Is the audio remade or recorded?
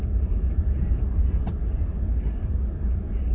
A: recorded